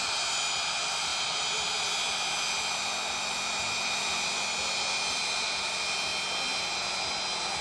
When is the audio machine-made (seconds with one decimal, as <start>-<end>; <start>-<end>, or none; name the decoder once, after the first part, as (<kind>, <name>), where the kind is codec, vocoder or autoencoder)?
none